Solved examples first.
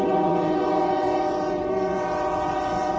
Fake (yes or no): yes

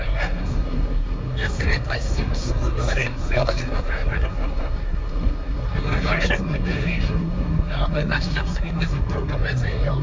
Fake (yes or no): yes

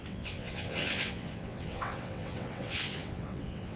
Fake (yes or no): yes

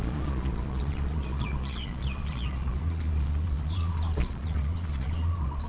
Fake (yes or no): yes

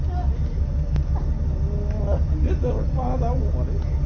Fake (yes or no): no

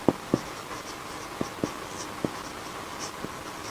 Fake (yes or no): no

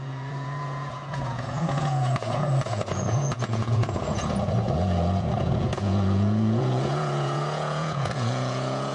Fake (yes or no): yes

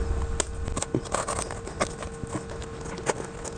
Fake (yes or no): no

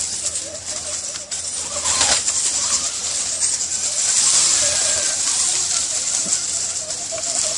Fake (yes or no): no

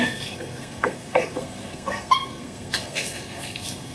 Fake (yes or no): yes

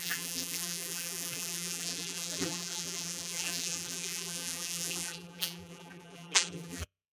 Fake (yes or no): yes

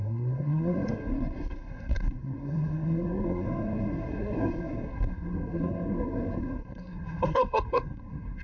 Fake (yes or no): yes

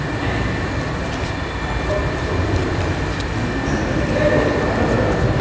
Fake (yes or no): no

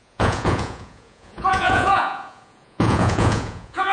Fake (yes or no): yes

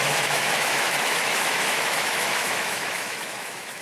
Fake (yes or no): yes